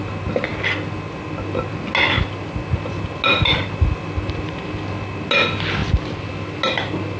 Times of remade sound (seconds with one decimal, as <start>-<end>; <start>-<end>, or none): none